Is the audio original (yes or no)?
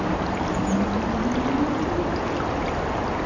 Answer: yes